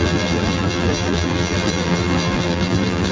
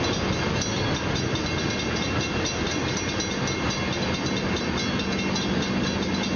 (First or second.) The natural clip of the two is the second